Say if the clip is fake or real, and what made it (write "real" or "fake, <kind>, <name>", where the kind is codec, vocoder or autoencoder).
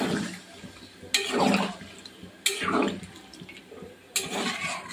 real